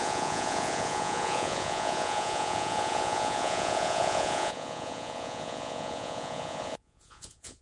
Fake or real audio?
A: fake